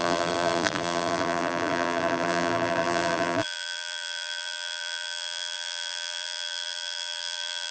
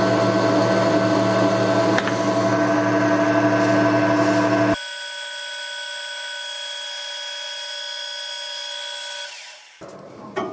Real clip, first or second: second